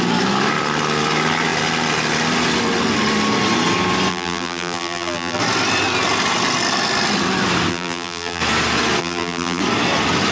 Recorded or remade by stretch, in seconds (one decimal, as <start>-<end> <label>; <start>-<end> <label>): 0.0-4.1 recorded; 4.1-5.4 remade; 5.4-7.7 recorded; 7.7-8.4 remade; 8.4-9.0 recorded; 9.0-9.6 remade; 9.6-10.3 recorded